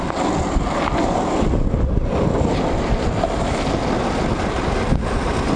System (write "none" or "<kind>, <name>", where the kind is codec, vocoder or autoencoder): none